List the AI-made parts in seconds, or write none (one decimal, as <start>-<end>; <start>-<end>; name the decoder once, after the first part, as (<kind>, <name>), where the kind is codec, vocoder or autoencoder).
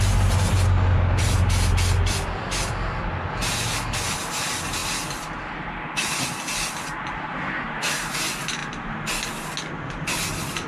none